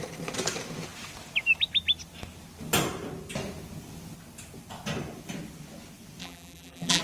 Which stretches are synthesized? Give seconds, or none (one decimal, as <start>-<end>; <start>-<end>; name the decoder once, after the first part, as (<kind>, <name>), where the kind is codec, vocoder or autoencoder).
6.2-7.0 (vocoder, BigVGAN v2)